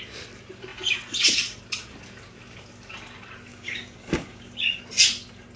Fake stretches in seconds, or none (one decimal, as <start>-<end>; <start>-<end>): 3.5-4.8